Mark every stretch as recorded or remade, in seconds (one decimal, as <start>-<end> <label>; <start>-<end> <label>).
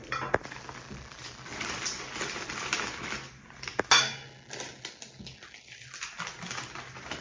0.0-7.2 recorded